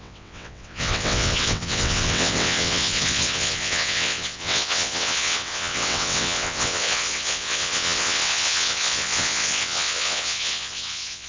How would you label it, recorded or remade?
remade